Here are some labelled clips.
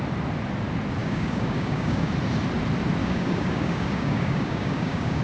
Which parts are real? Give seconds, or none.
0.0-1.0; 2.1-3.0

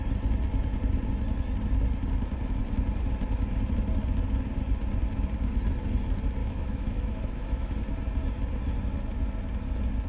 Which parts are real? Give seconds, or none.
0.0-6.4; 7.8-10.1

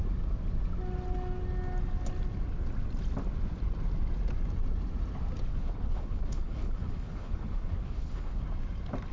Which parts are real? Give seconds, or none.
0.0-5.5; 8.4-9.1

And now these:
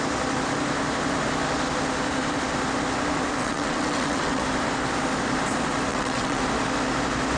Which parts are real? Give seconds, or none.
0.0-3.4; 4.4-5.9; 6.4-7.4

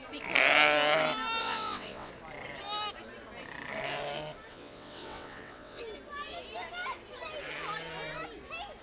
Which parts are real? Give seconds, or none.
0.0-1.4; 2.1-4.5; 5.8-8.8